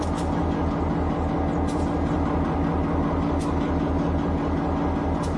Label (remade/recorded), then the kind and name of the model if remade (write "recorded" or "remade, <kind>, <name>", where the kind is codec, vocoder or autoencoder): recorded